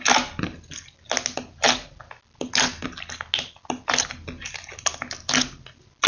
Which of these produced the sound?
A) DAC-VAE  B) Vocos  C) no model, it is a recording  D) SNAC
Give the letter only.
C